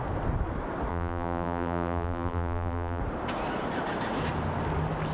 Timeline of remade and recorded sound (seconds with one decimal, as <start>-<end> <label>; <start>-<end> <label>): 0.0-0.9 recorded; 0.9-3.0 remade; 3.0-5.1 recorded